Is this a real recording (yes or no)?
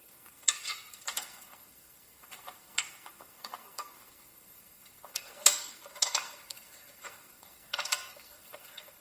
no